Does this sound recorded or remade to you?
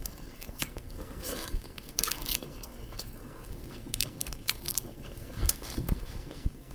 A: remade